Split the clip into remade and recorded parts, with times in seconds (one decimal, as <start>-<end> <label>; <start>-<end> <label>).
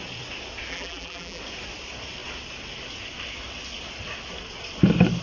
0.0-0.7 recorded; 0.7-1.4 remade; 1.4-5.2 recorded